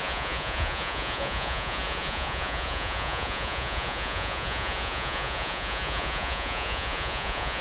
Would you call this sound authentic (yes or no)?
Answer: no